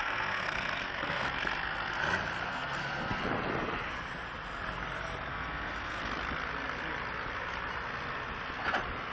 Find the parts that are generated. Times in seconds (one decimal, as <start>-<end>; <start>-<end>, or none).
0.0-2.0; 2.5-3.2; 5.3-6.1